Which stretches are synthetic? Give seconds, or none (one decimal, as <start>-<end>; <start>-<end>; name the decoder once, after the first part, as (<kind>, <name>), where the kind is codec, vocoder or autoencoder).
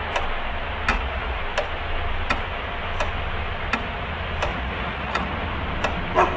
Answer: 0.9-1.4 (vocoder, Vocos); 4.5-5.3